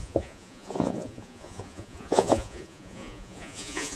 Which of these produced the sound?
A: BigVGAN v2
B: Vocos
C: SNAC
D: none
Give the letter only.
B